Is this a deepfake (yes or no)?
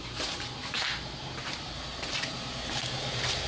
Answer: yes